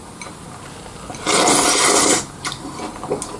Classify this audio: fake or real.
real